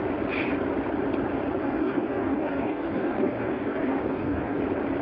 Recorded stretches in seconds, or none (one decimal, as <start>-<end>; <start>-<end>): 0.0-1.6; 4.6-5.0